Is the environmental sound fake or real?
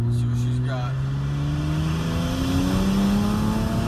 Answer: real